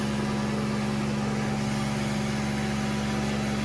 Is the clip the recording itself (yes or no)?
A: yes